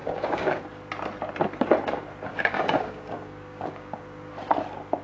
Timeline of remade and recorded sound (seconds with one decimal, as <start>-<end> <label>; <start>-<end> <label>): 0.0-0.6 remade; 0.6-2.3 recorded; 2.3-4.3 remade; 4.3-5.0 recorded